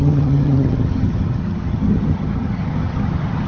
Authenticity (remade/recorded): remade